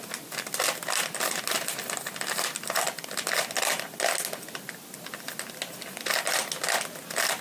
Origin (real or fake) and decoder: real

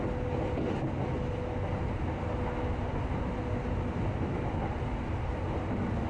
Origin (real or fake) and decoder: real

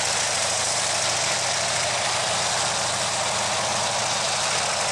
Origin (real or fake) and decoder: real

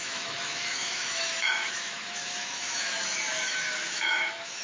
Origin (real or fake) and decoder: fake, autoencoder, DAC-VAE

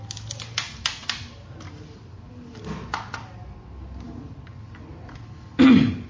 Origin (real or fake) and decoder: real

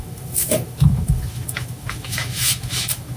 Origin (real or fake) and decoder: fake, autoencoder, DAC-VAE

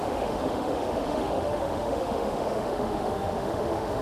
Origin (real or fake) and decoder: fake, autoencoder, DAC-VAE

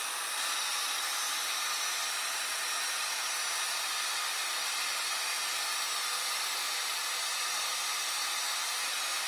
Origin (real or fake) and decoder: real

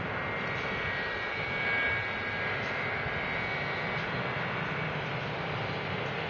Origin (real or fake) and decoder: real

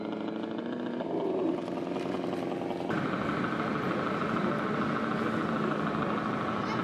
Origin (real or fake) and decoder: real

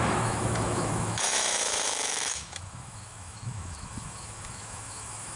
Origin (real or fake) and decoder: fake, autoencoder, DAC-VAE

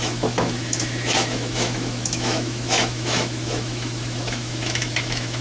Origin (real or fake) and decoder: fake, autoencoder, DAC-VAE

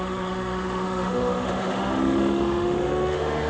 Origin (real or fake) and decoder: fake, autoencoder, DAC-VAE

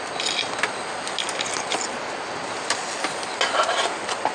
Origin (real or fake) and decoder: real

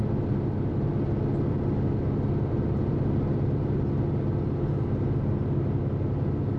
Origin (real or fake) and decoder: real